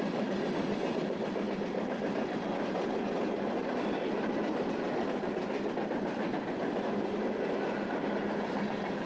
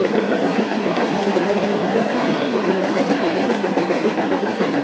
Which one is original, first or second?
first